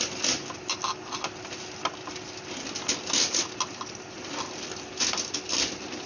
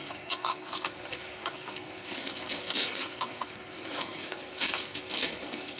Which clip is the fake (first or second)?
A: second